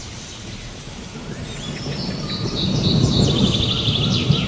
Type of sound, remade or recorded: recorded